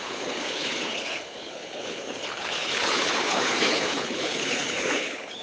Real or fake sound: fake